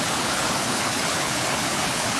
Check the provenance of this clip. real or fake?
fake